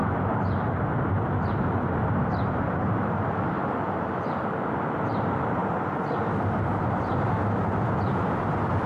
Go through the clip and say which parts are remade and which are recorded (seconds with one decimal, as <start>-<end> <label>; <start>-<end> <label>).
0.0-5.6 remade; 5.6-6.2 recorded; 6.2-8.9 remade